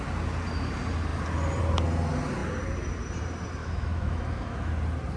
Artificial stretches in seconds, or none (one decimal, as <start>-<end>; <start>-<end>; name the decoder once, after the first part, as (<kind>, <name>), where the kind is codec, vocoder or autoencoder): 3.6-4.7 (autoencoder, DAC-VAE)